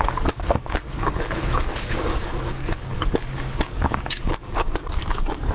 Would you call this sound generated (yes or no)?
yes